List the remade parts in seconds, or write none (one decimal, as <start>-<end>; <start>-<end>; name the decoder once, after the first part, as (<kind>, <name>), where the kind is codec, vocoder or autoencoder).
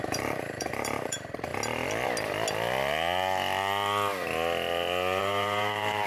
0.0-1.5 (vocoder, BigVGAN v2); 5.2-6.1